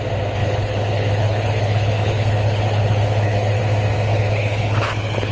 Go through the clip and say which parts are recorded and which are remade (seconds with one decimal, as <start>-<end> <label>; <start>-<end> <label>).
0.0-0.4 recorded; 0.4-3.6 remade; 3.6-4.1 recorded; 4.1-5.3 remade

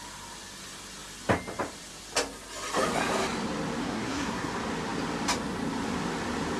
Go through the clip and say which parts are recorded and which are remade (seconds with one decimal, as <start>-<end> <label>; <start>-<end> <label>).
0.0-3.8 recorded; 3.8-4.5 remade; 4.5-6.6 recorded